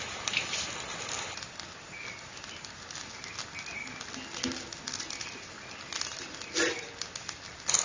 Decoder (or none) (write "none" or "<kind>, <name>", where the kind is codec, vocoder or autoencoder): none